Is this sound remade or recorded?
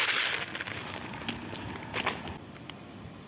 recorded